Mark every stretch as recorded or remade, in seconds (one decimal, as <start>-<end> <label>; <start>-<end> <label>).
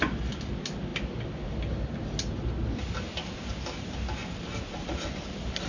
0.0-5.7 recorded